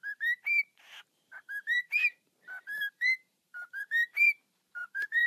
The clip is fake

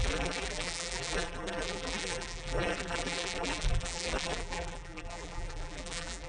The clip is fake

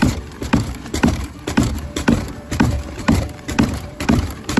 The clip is fake